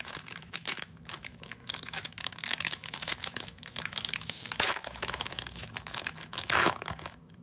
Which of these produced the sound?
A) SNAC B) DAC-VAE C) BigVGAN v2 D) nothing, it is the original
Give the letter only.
B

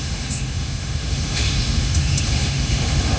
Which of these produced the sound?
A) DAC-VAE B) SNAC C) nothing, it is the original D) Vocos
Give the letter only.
A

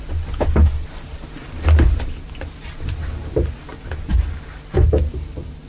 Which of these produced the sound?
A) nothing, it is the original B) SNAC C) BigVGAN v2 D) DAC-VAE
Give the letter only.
A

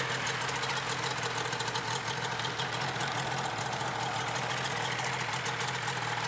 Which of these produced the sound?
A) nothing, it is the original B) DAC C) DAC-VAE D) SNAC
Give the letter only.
A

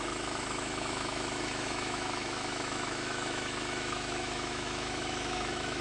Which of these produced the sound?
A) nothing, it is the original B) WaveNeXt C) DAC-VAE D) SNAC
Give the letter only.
C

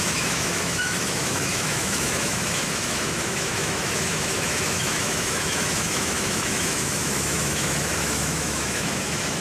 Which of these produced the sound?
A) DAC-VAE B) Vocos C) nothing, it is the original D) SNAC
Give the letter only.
A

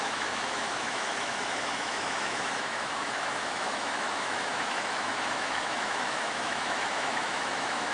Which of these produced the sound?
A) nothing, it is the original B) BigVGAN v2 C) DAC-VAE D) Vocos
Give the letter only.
C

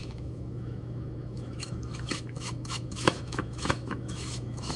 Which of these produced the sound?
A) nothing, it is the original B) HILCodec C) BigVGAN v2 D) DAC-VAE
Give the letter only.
D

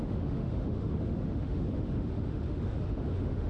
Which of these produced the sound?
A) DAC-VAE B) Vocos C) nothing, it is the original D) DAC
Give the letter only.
A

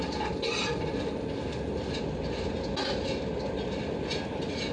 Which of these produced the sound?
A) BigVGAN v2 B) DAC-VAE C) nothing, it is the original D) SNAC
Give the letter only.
C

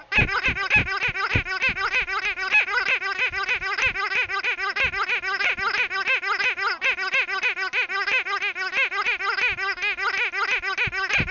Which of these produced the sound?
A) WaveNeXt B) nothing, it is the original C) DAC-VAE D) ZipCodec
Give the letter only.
B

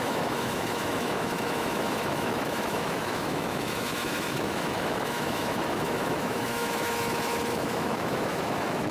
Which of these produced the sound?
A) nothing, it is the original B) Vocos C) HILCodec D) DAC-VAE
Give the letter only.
D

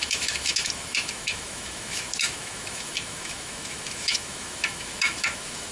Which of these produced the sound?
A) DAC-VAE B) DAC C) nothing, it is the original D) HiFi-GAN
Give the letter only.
A